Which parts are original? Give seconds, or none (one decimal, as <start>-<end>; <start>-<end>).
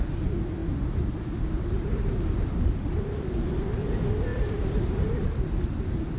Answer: 0.0-6.2